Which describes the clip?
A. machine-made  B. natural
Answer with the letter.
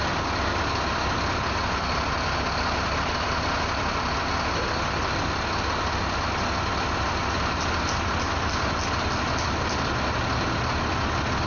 B